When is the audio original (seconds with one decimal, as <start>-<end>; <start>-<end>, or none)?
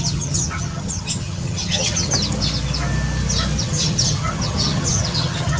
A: 2.2-3.6